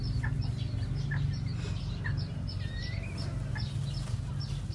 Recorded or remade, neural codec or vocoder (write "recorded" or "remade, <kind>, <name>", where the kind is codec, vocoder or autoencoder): recorded